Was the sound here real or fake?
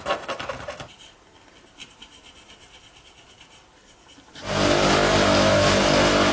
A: real